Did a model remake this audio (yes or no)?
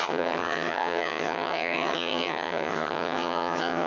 yes